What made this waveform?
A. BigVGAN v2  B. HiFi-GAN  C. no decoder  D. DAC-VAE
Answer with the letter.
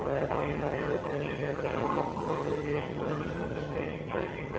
B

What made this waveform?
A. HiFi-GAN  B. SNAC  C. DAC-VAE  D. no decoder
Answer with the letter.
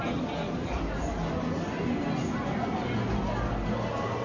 D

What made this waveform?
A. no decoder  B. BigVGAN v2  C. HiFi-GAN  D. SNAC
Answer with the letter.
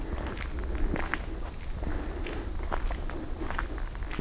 A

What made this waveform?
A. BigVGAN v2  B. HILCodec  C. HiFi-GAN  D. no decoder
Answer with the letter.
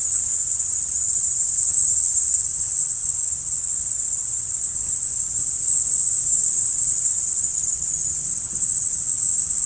C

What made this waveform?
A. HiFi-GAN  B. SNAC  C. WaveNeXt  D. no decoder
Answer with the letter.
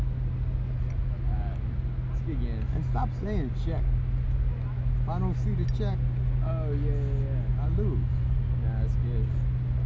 D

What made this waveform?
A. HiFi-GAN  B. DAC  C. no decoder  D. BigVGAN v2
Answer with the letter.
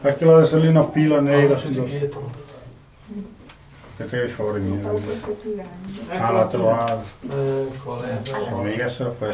C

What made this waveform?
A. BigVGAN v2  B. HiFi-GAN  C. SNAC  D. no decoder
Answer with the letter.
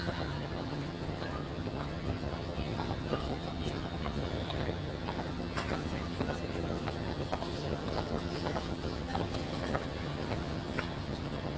B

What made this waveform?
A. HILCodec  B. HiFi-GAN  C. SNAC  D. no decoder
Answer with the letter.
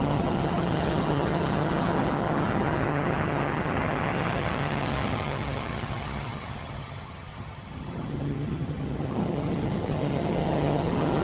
B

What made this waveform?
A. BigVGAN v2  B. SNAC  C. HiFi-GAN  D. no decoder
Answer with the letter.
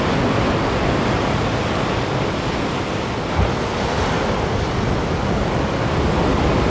D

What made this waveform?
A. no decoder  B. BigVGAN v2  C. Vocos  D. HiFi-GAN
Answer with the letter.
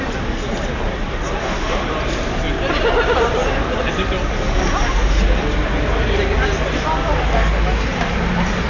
A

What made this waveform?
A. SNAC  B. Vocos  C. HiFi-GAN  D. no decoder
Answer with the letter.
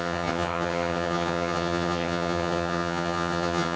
C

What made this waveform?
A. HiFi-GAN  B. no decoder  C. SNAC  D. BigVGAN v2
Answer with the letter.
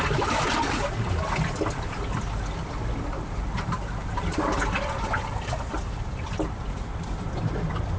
B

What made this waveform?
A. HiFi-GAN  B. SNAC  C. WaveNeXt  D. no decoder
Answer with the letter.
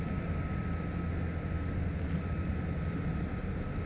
D